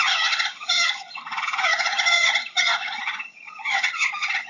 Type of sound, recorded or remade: remade